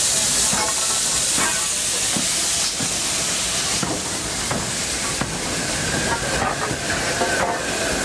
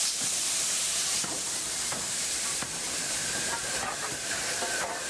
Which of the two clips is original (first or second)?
first